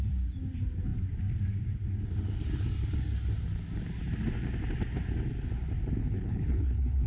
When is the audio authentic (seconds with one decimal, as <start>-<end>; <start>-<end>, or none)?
0.0-6.0